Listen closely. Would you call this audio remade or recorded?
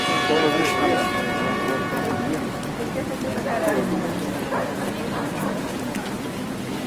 recorded